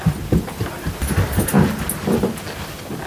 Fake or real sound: real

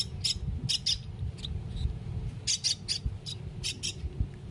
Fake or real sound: real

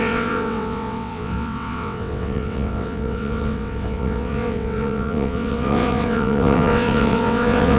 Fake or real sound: fake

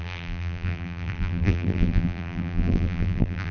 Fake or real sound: fake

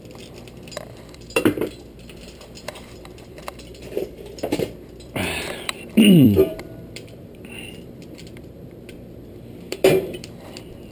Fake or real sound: fake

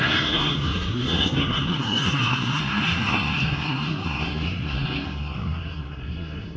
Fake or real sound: fake